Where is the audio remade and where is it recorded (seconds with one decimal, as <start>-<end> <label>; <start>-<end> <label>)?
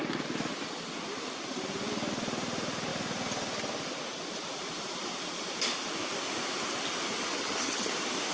0.0-7.3 recorded; 7.3-7.9 remade; 7.9-8.3 recorded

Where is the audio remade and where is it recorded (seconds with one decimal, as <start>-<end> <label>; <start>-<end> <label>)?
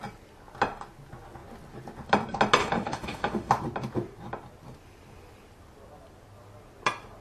0.0-2.6 recorded; 2.6-3.5 remade; 3.5-7.2 recorded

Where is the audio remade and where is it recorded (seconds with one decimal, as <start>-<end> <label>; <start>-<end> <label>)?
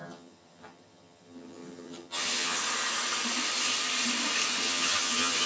0.0-2.6 remade; 2.6-4.6 recorded; 4.6-5.5 remade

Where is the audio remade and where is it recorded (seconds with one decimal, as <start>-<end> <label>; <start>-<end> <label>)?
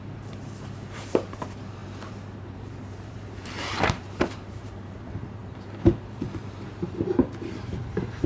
0.0-8.3 remade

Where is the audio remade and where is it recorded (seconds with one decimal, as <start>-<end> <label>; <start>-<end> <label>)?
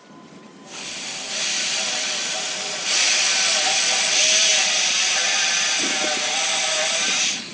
0.0-4.5 remade; 4.5-5.5 recorded; 5.5-7.5 remade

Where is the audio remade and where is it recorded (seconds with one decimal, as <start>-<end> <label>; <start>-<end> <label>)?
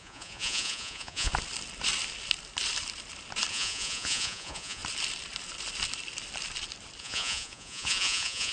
0.0-1.3 remade; 1.3-3.5 recorded; 3.5-4.8 remade; 4.8-7.0 recorded; 7.0-8.5 remade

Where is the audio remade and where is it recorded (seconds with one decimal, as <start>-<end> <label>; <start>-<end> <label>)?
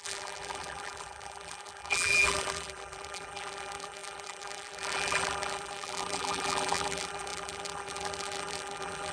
0.0-9.1 remade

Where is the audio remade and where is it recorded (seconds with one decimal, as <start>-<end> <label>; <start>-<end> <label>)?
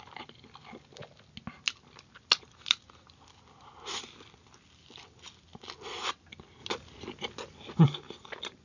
0.0-8.6 recorded